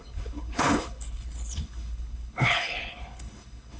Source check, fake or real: fake